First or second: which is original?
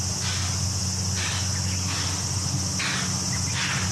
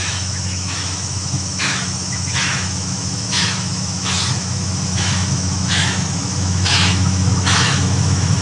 first